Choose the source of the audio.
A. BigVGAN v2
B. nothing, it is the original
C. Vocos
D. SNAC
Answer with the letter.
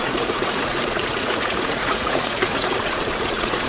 C